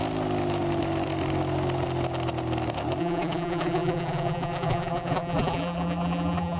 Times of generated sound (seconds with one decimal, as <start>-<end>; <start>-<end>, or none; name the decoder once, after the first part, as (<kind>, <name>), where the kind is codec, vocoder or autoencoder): 3.0-6.6 (vocoder, BigVGAN v2)